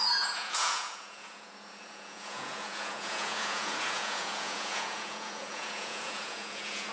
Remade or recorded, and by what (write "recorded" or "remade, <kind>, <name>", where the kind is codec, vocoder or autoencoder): remade, vocoder, Vocos